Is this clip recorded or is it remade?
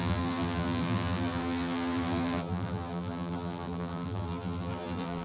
remade